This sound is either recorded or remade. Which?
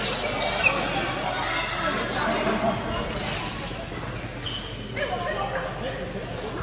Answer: recorded